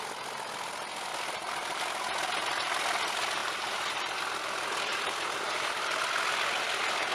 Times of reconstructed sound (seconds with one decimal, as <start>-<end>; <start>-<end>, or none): 1.1-1.8; 3.4-4.2; 4.9-6.0